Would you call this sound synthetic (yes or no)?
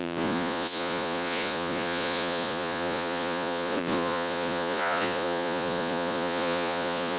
yes